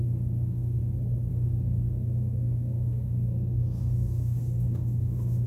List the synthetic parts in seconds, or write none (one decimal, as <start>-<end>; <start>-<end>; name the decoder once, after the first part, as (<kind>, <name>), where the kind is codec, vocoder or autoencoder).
0.0-0.8 (codec, SNAC); 1.3-5.5